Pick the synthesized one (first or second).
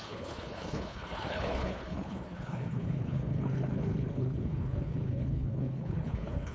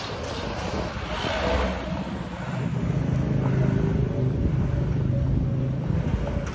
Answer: first